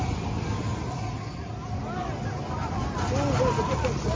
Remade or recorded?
recorded